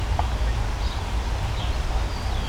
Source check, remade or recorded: recorded